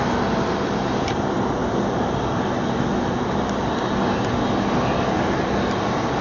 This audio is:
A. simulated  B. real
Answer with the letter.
B